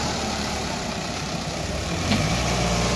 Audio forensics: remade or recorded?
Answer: remade